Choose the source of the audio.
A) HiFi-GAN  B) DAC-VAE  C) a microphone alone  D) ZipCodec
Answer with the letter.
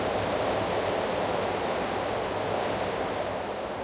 C